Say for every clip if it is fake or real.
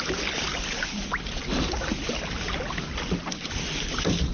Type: real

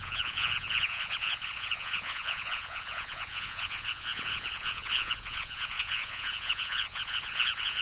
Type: fake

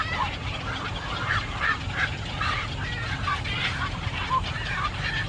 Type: real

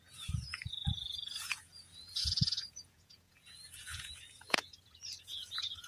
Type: fake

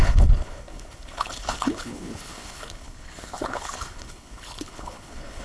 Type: fake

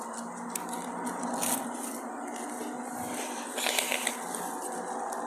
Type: real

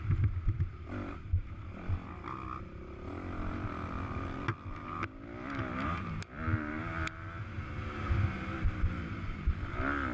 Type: real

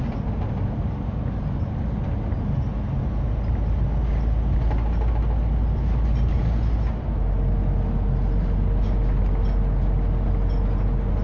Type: real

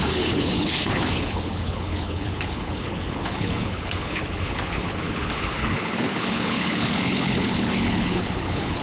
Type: fake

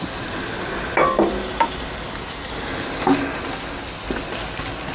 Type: real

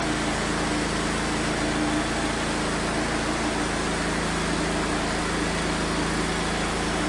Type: real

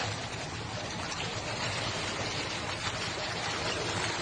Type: fake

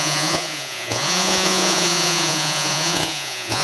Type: fake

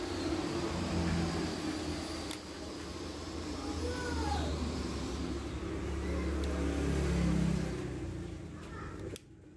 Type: real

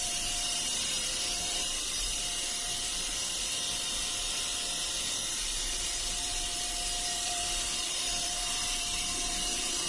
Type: fake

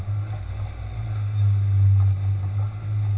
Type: real